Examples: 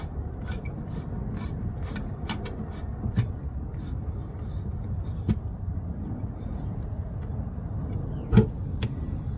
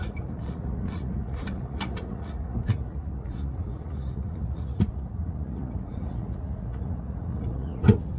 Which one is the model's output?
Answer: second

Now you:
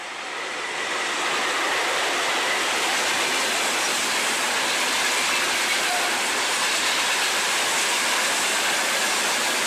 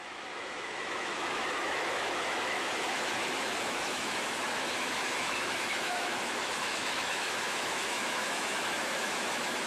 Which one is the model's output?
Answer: second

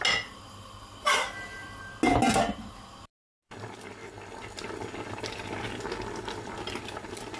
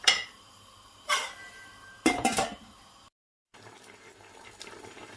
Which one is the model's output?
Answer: second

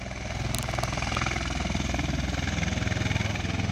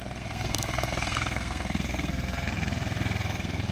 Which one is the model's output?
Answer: second